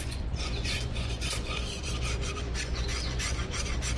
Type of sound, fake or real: fake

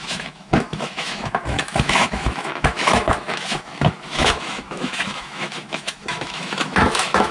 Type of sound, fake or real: fake